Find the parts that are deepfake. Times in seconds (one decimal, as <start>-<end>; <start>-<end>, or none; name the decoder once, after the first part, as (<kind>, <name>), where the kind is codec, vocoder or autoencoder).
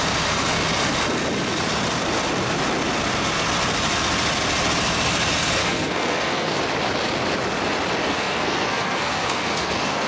5.6-6.6 (codec, SNAC); 8.0-10.1